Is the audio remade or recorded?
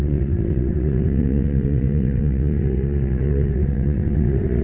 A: remade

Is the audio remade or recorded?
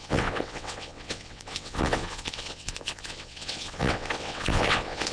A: remade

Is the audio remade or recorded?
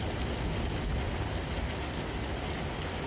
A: recorded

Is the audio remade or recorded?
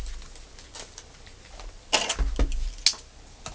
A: recorded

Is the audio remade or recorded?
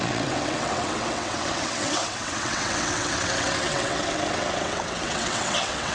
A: remade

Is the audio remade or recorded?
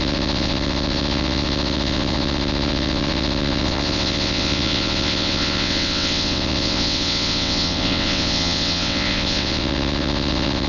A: remade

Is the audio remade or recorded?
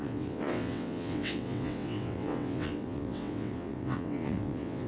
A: remade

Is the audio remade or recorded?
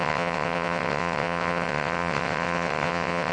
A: remade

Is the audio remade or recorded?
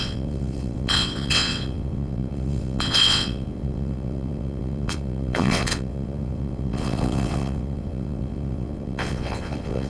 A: remade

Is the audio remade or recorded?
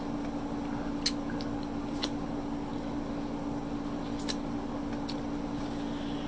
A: recorded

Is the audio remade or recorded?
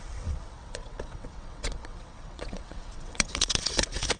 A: remade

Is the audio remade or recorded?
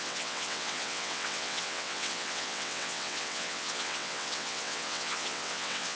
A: remade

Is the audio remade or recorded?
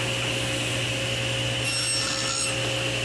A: recorded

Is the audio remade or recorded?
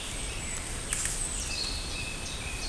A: recorded